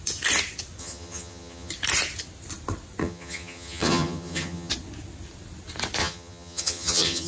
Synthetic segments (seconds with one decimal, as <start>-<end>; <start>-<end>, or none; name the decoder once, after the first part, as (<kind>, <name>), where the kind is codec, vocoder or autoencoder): 0.8-1.7 (vocoder, HiFi-GAN); 3.0-4.7; 6.0-7.3